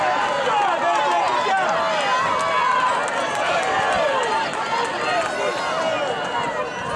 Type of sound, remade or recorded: recorded